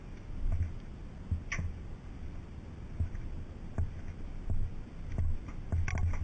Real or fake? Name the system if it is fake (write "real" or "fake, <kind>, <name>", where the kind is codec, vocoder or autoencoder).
real